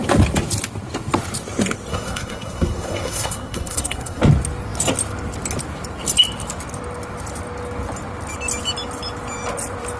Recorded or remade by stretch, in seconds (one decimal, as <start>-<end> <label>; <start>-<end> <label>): 0.0-1.9 recorded; 1.9-4.2 remade; 4.2-10.0 recorded